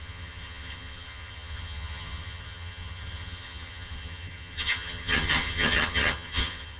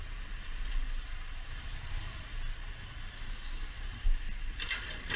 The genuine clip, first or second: second